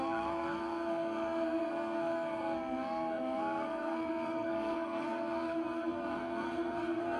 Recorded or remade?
remade